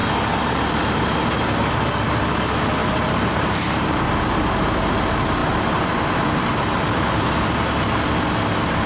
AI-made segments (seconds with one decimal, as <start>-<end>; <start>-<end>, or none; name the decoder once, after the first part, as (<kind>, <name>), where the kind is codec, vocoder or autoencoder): 2.8-4.1 (vocoder, BigVGAN v2)